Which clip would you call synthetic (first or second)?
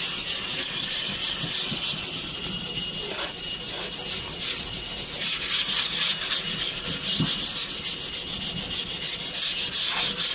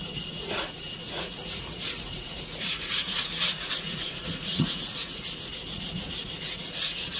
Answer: second